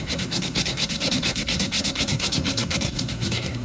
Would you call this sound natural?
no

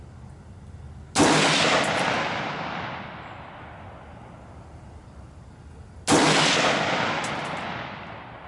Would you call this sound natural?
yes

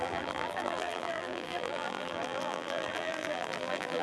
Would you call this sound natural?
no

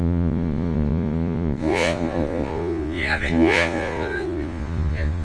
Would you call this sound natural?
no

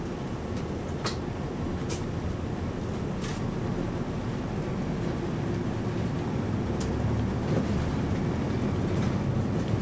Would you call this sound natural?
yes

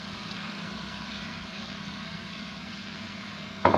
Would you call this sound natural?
no